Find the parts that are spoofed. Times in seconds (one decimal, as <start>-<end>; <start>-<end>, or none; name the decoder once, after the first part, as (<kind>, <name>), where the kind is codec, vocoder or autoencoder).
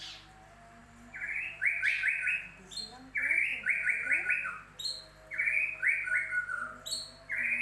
0.8-1.8 (vocoder, BigVGAN v2)